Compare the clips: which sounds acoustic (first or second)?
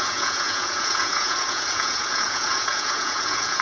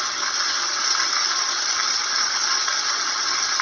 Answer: second